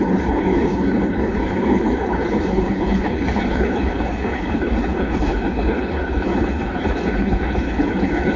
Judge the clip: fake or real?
fake